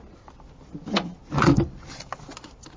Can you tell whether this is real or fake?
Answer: real